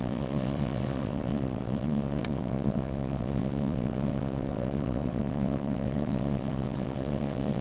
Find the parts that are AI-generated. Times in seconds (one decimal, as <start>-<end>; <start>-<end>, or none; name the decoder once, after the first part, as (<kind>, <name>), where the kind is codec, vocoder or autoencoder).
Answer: 0.0-7.6 (vocoder, WaveNeXt)